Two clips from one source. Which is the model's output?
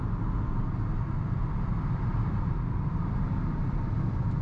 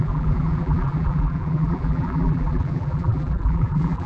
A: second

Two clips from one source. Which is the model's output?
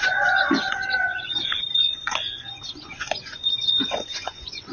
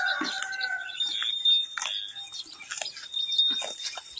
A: first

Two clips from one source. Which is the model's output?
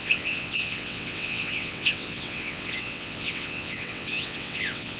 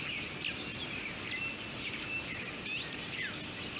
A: first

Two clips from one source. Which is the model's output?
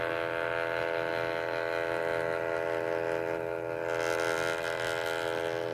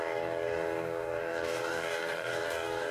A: second